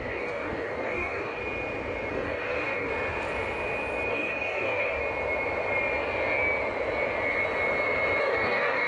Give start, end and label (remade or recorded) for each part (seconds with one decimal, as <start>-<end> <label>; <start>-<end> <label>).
0.0-1.4 remade; 1.4-2.1 recorded; 2.1-2.9 remade; 2.9-4.1 recorded; 4.1-5.0 remade; 5.0-8.2 recorded; 8.2-8.9 remade